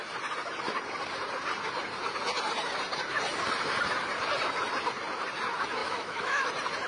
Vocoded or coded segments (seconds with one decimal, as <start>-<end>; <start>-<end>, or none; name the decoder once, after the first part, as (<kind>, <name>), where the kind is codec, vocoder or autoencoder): 5.8-6.5 (autoencoder, DAC-VAE)